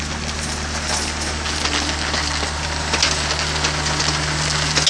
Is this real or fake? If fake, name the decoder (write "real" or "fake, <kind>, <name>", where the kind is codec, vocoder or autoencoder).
real